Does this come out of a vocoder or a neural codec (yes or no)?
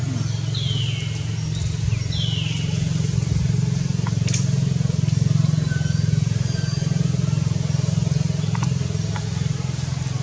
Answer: no